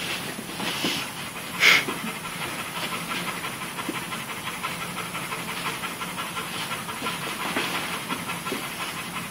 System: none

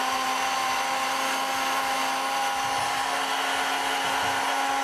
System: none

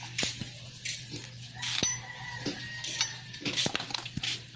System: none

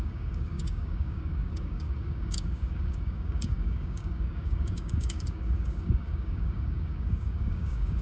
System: codec, DAC